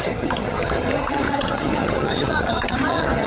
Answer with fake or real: fake